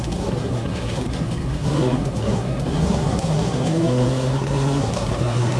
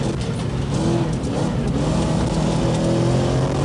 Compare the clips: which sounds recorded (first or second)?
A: second